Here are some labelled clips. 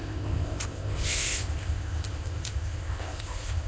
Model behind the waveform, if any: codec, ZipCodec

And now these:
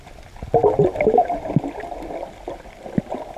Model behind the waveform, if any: none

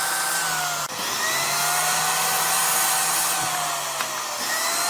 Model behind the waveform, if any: none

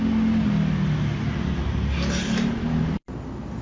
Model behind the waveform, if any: none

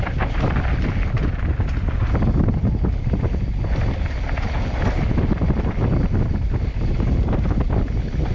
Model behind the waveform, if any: none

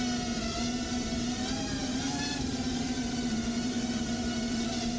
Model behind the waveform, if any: vocoder, BigVGAN v2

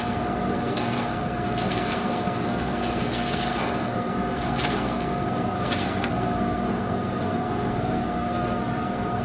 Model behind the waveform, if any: codec, SNAC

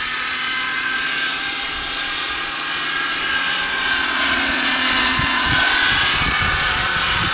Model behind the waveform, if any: vocoder, Vocos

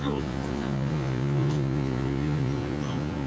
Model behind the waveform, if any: vocoder, Vocos